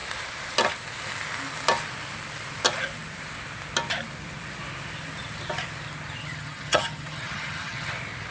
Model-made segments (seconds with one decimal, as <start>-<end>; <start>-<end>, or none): 6.2-7.9